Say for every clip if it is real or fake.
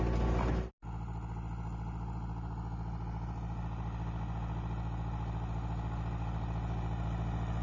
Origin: real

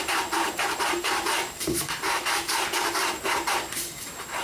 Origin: fake